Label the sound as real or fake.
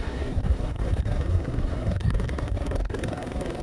fake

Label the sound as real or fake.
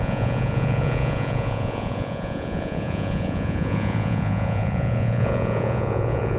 fake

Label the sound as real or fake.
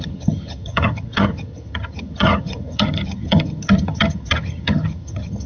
fake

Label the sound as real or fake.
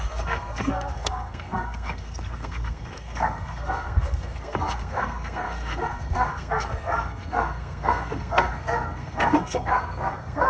fake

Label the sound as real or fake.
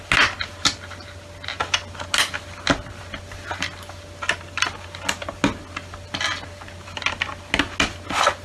real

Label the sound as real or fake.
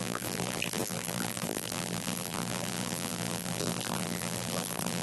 fake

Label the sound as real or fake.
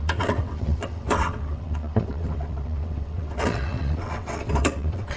fake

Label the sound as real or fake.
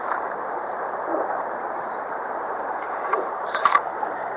fake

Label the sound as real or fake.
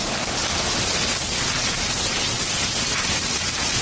real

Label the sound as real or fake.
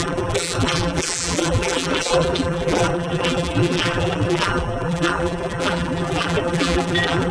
fake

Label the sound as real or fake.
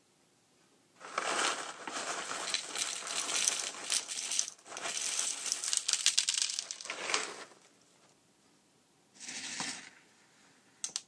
real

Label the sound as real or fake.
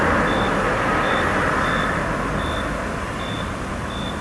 real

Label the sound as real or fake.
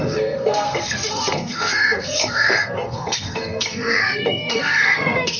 fake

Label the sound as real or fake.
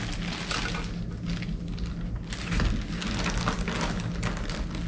real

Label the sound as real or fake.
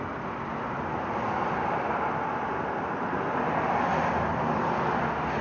real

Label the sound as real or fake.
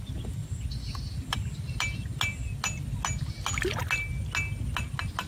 real